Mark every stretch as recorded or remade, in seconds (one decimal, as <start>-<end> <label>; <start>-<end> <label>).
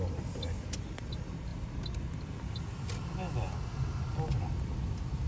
0.0-1.5 remade; 1.5-4.6 recorded; 4.6-5.3 remade